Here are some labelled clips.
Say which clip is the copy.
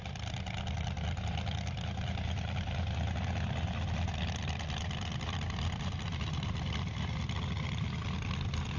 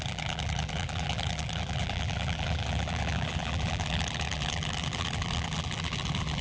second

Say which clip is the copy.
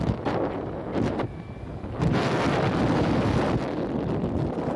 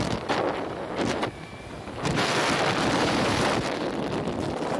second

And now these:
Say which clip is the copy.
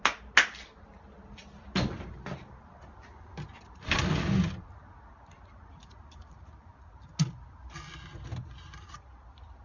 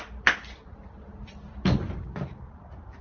second